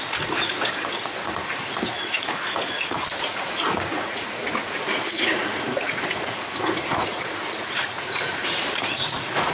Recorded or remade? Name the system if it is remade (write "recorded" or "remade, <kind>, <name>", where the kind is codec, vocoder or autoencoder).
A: remade, vocoder, Vocos